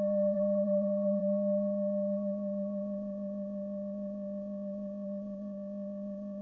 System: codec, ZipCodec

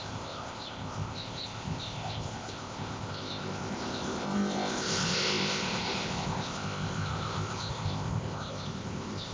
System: codec, ZipCodec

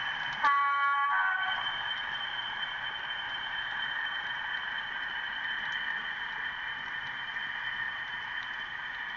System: none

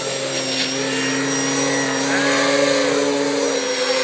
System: none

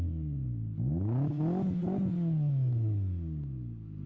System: none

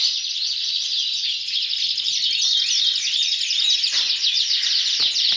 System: none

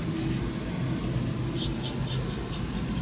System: none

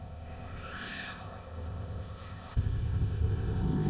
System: codec, ZipCodec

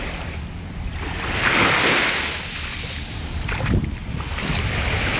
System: none